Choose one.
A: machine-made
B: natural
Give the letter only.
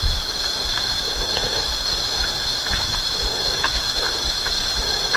A